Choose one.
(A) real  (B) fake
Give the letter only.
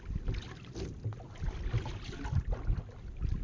A